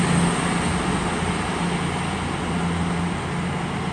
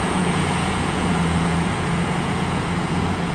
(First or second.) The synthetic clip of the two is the second